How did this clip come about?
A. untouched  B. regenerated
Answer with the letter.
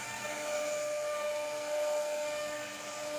B